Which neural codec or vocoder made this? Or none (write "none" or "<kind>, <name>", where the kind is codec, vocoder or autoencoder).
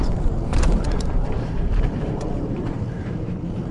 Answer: vocoder, BigVGAN v2